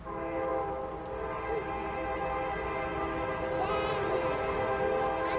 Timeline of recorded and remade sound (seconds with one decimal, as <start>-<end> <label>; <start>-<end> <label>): 0.0-5.4 recorded